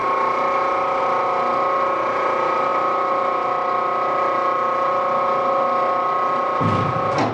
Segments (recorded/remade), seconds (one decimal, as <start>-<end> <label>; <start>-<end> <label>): 0.0-7.3 recorded